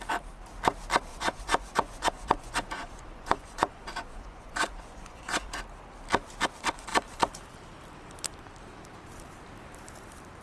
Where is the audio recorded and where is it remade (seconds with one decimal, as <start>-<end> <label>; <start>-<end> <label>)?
0.0-1.1 recorded; 1.1-5.6 remade; 5.6-10.4 recorded